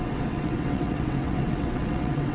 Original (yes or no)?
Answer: no